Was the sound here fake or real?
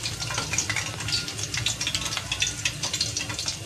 real